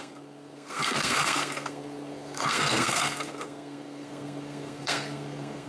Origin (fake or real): fake